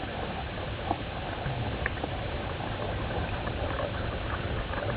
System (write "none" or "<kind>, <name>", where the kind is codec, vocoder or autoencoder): none